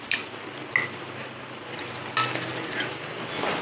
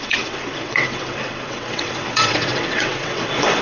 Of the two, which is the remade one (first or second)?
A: second